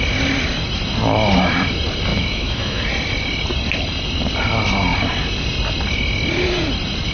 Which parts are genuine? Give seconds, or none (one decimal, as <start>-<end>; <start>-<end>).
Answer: 0.0-2.1; 2.8-7.1